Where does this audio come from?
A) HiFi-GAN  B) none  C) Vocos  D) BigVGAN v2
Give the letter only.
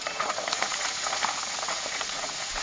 C